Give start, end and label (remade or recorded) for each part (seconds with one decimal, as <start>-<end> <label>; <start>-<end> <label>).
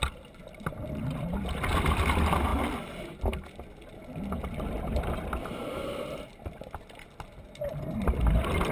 0.0-8.7 recorded